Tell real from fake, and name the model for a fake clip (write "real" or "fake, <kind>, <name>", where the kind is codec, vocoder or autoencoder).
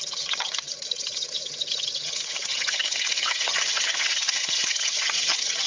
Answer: fake, vocoder, HiFi-GAN